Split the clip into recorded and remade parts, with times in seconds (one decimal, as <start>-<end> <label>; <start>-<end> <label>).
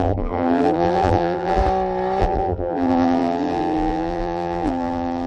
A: 0.0-1.6 remade; 1.6-2.2 recorded; 2.2-5.3 remade